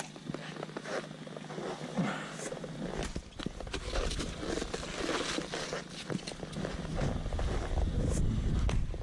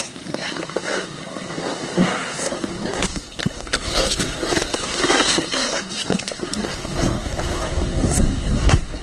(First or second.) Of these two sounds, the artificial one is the second